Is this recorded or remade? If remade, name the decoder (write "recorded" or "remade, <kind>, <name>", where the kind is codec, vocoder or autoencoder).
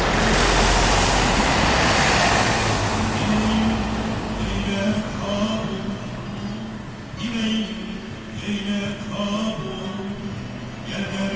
recorded